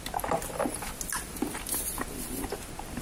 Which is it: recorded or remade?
recorded